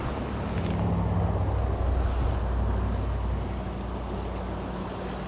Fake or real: real